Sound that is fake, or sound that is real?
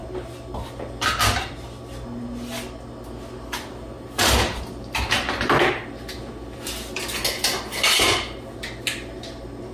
real